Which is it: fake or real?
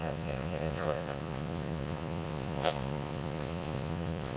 fake